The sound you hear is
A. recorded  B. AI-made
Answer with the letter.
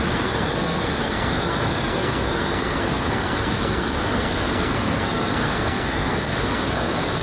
B